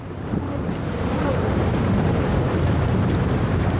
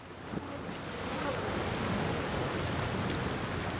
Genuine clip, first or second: second